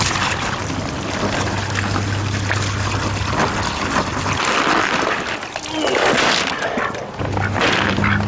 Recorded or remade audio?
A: recorded